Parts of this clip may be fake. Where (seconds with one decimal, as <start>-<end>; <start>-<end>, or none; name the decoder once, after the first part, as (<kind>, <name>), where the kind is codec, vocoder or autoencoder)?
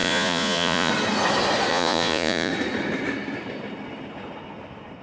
0.0-0.9 (vocoder, Vocos); 1.7-2.5